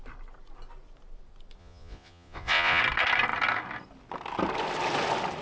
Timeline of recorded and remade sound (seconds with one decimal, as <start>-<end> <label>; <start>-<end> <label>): 0.0-1.6 recorded; 1.6-2.8 remade; 2.8-5.4 recorded